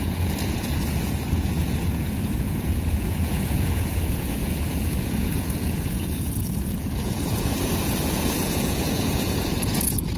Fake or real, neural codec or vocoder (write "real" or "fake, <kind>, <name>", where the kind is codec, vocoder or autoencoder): fake, vocoder, Vocos